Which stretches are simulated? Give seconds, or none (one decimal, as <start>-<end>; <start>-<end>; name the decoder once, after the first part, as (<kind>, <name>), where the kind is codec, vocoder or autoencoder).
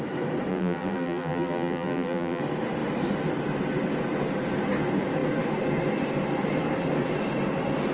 0.5-2.4 (vocoder, BigVGAN v2)